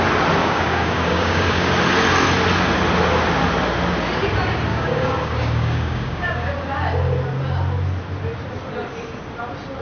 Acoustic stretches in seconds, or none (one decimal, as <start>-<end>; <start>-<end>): 0.0-0.4; 1.7-4.7; 6.5-9.8